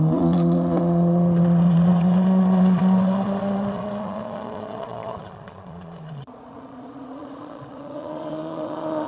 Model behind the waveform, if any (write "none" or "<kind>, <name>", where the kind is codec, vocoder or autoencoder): vocoder, Vocos